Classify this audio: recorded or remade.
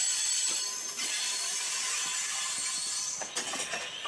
recorded